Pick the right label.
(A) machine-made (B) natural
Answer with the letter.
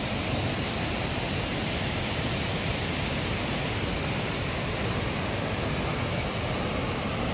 B